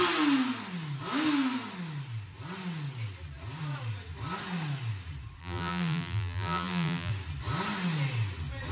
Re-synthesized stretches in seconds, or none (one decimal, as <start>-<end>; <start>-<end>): 5.4-7.1